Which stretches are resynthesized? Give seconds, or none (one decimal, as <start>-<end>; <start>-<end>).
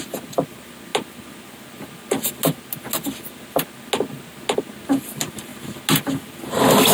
none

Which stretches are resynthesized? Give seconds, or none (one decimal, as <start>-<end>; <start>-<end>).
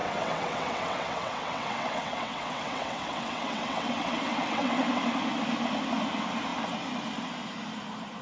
0.0-4.9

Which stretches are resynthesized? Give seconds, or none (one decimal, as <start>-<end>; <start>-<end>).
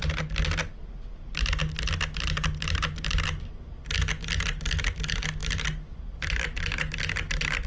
none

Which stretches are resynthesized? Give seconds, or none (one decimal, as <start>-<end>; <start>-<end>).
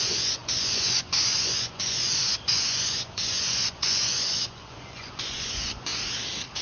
0.0-5.9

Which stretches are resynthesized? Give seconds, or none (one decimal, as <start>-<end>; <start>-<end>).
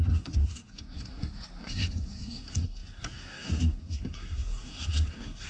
0.0-5.5